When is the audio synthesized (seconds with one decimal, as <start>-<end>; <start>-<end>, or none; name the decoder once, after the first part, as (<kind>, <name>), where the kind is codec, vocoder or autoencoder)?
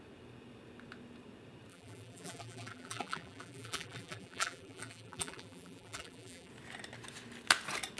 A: 1.7-6.5 (vocoder, BigVGAN v2)